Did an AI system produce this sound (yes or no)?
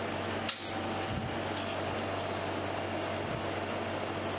no